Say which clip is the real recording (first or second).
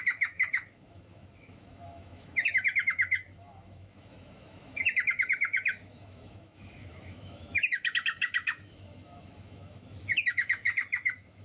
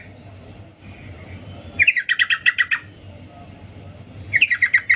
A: second